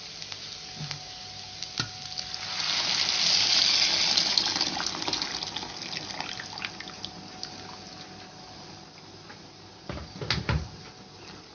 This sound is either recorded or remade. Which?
recorded